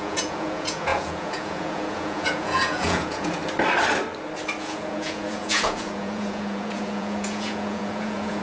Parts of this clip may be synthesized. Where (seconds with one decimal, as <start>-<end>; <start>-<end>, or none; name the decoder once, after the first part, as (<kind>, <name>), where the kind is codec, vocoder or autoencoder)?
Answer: 0.0-3.4 (vocoder, Vocos); 4.6-8.4